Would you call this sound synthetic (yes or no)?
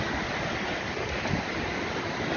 no